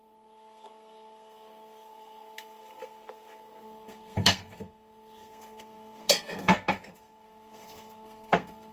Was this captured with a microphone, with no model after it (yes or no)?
no